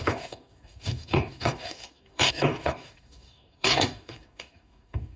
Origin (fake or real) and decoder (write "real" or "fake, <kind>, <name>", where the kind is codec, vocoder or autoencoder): fake, codec, DAC